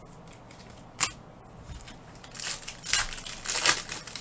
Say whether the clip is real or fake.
real